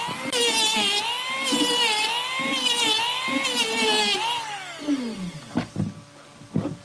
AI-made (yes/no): no